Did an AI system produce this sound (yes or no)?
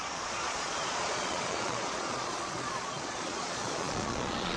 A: yes